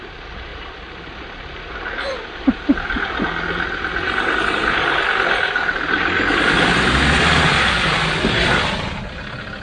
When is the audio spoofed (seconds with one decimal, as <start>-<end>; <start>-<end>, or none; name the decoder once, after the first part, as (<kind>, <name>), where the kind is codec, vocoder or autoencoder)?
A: 0.5-3.2 (vocoder, BigVGAN v2)